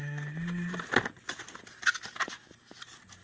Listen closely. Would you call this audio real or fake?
real